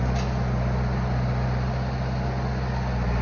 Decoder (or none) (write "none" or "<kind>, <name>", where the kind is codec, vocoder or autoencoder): none